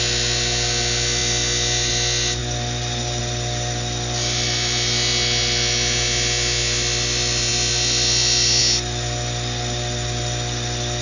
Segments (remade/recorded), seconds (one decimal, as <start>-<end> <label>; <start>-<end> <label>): 0.0-11.0 recorded